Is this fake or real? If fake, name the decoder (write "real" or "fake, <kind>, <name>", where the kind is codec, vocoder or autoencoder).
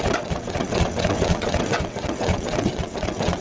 fake, vocoder, WaveNeXt